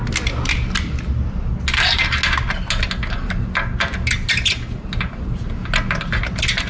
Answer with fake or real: real